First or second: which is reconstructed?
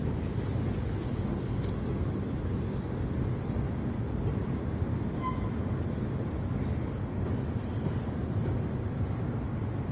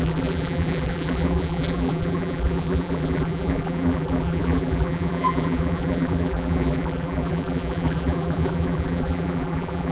second